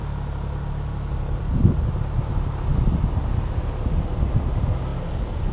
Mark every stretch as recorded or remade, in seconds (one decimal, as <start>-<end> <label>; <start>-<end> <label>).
0.0-5.5 recorded